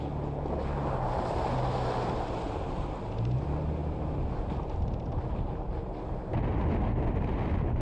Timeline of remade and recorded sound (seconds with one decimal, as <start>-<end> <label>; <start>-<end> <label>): 0.0-7.8 recorded